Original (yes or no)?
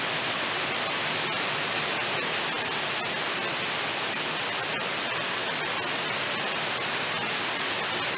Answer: yes